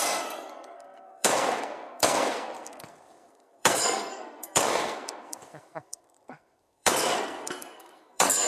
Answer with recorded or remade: remade